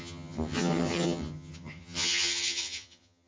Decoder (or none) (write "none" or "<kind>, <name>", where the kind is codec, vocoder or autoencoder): vocoder, HiFi-GAN